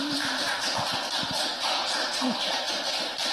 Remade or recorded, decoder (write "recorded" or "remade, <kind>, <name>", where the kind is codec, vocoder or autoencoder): remade, vocoder, BigVGAN v2